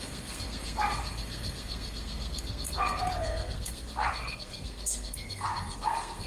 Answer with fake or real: fake